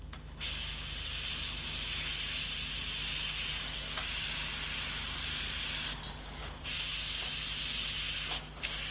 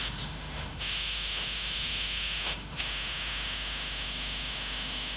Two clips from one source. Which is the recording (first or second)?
first